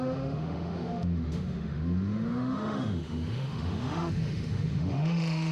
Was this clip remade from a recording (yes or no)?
yes